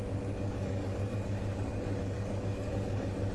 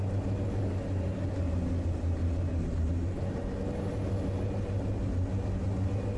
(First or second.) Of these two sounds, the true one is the second